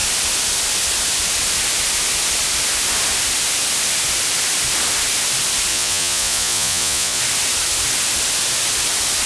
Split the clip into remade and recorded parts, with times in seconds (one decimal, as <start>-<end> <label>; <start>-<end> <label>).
0.0-5.7 recorded; 5.7-7.2 remade; 7.2-9.3 recorded